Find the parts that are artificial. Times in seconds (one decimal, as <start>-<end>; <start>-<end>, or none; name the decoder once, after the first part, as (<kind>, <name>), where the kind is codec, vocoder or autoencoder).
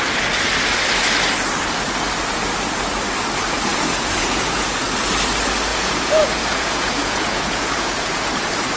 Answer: 3.7-4.8 (vocoder, Vocos); 5.7-8.3